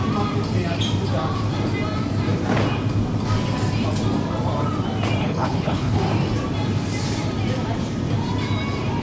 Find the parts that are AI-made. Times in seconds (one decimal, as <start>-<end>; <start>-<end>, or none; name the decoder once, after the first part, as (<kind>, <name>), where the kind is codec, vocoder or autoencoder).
5.2-6.0 (codec, HILCodec)